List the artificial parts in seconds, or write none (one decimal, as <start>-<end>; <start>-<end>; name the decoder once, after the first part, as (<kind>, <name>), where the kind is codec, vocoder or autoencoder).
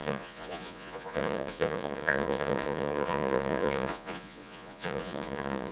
0.0-5.7 (vocoder, Vocos)